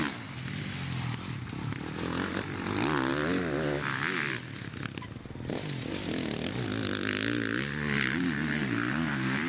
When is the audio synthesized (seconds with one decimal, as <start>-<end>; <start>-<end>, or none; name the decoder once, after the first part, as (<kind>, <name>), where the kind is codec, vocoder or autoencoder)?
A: none